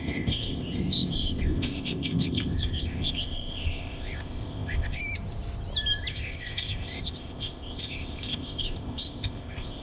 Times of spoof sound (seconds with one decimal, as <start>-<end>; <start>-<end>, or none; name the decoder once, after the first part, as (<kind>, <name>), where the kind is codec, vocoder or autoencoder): 0.0-5.0 (codec, ZipCodec); 6.1-9.8